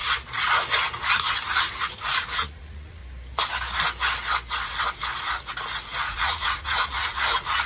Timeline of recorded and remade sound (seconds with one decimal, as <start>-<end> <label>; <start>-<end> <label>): 0.0-1.3 recorded; 1.3-3.0 remade; 3.0-5.8 recorded; 5.8-7.7 remade